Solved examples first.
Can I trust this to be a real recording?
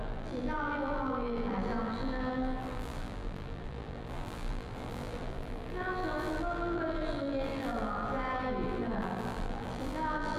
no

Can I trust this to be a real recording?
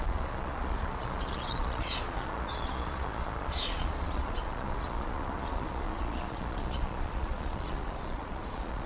no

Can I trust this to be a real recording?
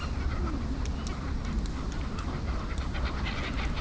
yes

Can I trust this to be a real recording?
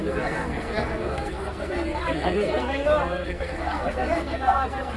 no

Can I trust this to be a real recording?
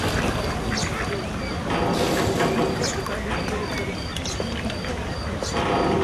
yes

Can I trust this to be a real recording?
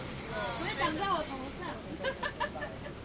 yes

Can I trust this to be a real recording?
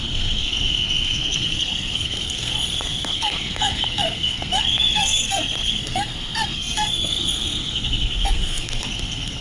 no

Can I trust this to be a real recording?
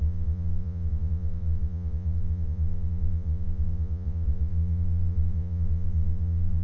no